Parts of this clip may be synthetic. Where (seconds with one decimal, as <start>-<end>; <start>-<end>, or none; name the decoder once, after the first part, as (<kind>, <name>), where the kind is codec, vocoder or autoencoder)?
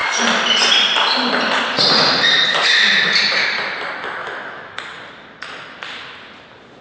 4.2-4.8 (autoencoder, DAC-VAE)